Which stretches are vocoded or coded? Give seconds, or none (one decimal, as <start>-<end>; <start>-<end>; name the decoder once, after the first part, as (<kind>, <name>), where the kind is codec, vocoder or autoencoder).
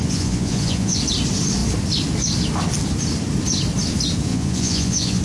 0.0-1.0 (vocoder, Vocos); 4.3-5.2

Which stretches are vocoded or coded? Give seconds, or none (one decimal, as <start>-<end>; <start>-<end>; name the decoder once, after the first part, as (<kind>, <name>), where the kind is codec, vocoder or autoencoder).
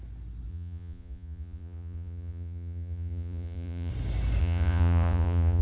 0.5-3.9 (vocoder, Vocos); 4.4-5.6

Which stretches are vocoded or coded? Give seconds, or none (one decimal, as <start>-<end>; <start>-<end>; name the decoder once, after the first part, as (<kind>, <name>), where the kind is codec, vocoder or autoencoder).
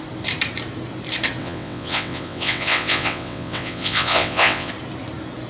1.4-4.7 (vocoder, WaveNeXt)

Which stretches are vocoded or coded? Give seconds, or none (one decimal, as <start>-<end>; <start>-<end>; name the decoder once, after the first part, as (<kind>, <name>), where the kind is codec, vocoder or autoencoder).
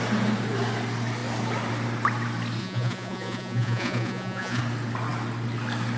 2.6-4.6 (vocoder, Vocos)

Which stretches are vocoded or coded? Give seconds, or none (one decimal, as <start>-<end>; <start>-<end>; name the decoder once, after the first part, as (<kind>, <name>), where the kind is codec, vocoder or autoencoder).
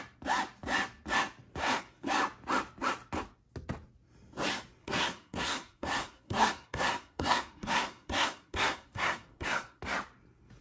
1.6-2.1 (codec, SNAC); 4.8-9.8